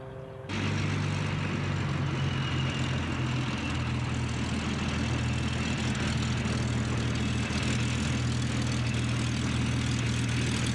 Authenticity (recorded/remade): recorded